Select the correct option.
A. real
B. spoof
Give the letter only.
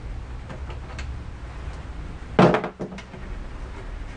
A